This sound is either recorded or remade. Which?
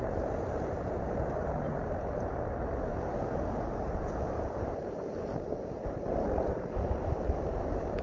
remade